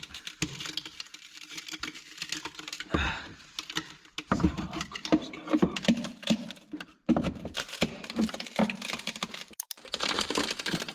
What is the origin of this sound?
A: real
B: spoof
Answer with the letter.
B